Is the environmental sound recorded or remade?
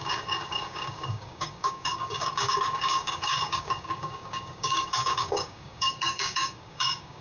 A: remade